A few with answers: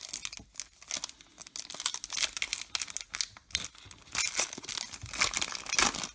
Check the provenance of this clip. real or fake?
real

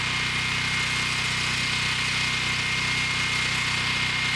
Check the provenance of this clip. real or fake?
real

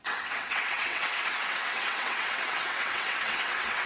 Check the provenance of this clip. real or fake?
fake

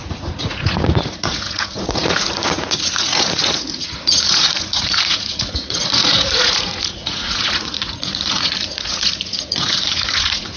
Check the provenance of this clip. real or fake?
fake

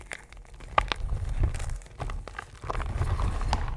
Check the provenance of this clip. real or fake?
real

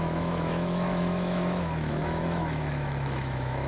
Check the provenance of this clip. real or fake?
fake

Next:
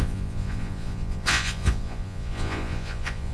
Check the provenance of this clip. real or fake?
fake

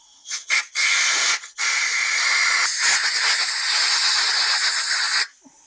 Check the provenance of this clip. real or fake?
real